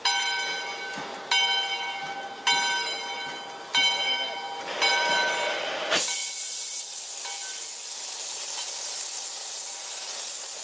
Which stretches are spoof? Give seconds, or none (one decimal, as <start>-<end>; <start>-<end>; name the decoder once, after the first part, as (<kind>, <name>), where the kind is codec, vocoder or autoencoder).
6.2-7.0 (vocoder, WaveNeXt)